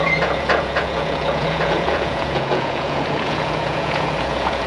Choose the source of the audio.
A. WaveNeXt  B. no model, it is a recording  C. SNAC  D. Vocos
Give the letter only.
D